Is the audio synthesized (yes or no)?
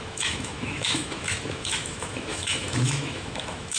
yes